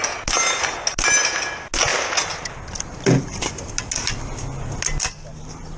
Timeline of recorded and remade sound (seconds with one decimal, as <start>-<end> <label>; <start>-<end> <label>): 0.0-5.8 recorded